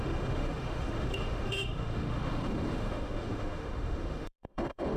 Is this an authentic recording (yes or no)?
no